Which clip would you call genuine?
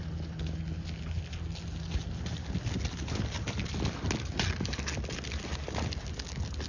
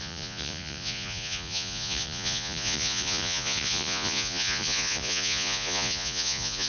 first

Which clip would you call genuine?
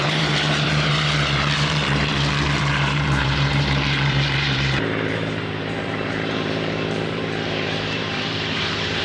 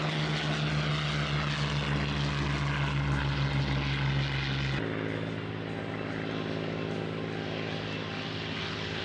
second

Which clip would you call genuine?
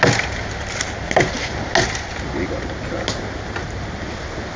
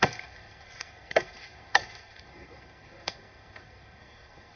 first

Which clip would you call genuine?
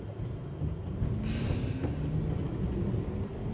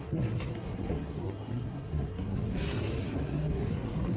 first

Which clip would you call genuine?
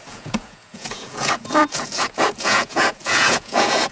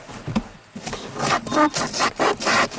second